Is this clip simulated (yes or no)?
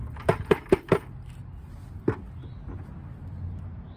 no